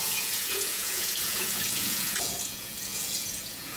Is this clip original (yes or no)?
no